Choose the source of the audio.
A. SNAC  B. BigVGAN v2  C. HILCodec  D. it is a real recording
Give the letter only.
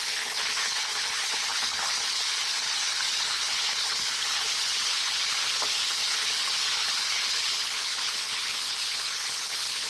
C